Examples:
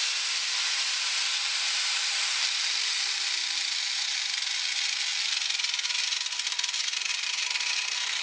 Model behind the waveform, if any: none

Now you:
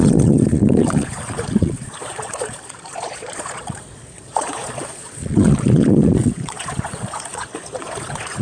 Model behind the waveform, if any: vocoder, Vocos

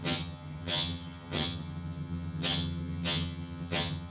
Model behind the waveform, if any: vocoder, HiFi-GAN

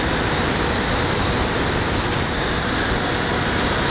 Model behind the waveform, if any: none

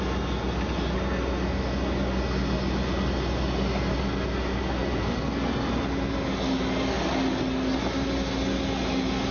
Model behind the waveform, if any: none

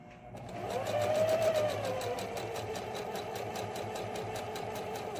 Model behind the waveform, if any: vocoder, BigVGAN v2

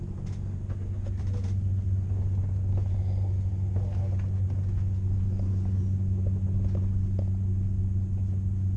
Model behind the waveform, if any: none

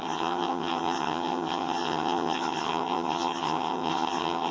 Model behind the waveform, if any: vocoder, HiFi-GAN